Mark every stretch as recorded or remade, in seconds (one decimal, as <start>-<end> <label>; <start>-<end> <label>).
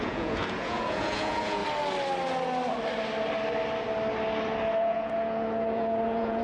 0.0-1.6 remade; 1.6-4.6 recorded; 4.6-6.4 remade